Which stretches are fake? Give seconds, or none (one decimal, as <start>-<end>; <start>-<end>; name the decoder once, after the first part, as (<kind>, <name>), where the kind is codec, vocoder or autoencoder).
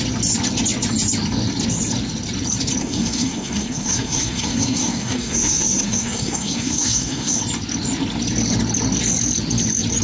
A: 2.8-7.4 (codec, SNAC)